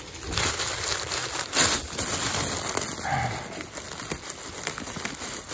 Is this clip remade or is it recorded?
recorded